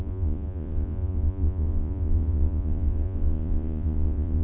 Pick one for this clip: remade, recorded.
remade